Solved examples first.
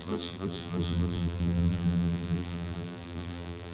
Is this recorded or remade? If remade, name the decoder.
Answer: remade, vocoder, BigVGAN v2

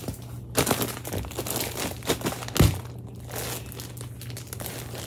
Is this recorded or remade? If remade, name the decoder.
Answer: recorded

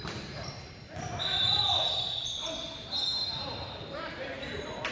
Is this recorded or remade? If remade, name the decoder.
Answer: remade, vocoder, BigVGAN v2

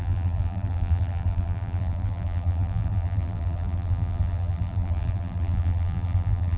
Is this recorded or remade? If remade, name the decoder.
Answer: remade, vocoder, BigVGAN v2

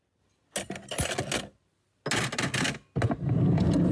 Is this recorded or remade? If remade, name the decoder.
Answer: recorded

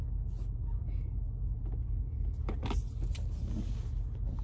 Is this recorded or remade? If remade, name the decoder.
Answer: recorded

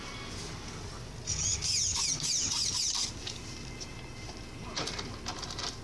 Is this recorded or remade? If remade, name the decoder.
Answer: recorded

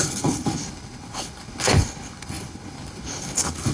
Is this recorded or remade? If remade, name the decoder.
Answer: remade, codec, HILCodec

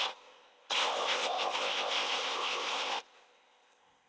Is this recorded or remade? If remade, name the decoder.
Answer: remade, codec, ZipCodec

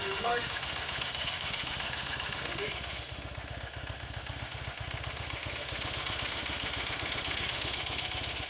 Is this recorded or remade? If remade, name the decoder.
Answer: remade, autoencoder, DAC-VAE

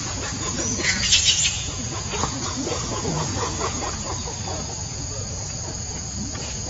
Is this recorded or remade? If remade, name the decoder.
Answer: remade, vocoder, Vocos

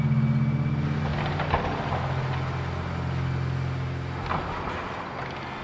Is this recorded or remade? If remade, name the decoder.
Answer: recorded